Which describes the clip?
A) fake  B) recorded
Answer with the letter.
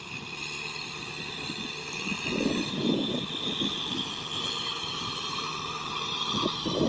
B